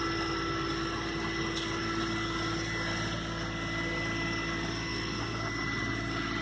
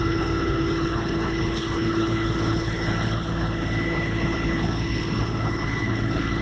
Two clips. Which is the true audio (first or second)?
first